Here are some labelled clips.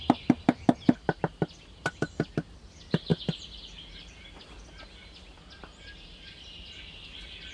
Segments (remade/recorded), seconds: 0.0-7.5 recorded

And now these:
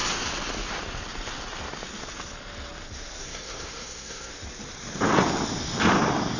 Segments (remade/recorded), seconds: 0.0-3.2 recorded; 3.2-4.3 remade; 4.3-6.4 recorded

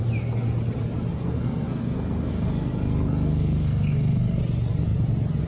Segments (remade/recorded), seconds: 0.0-1.1 recorded; 1.1-4.4 remade; 4.4-5.5 recorded

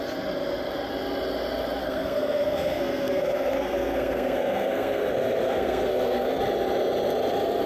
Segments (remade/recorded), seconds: 0.0-1.8 recorded; 1.8-6.4 remade; 6.4-7.7 recorded

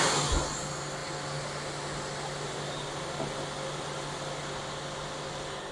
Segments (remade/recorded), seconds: 0.0-5.7 recorded

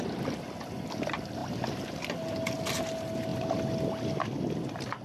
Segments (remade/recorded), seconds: 0.0-5.0 recorded

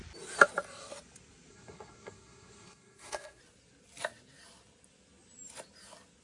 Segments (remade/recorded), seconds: 0.0-1.5 recorded; 1.5-3.4 remade; 3.4-6.2 recorded